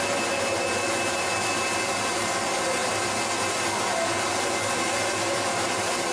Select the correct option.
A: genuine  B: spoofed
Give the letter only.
A